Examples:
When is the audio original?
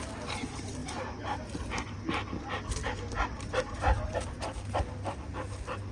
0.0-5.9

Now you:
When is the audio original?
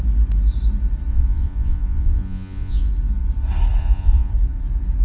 0.0-1.1; 2.9-3.8; 4.3-5.0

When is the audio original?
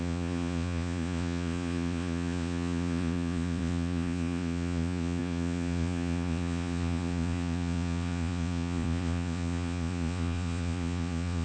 none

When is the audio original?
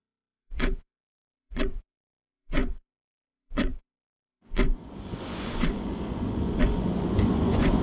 none